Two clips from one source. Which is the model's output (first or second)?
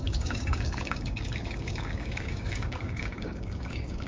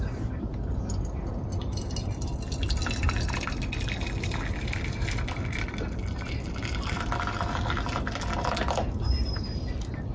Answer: first